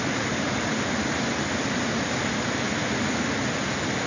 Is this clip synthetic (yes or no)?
no